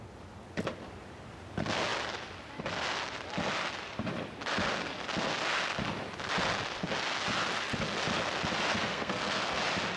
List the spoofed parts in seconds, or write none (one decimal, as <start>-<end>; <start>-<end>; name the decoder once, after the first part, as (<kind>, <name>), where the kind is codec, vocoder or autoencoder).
8.7-9.6 (codec, SNAC)